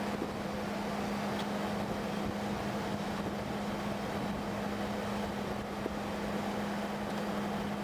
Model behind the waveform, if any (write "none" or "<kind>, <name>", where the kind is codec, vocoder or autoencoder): none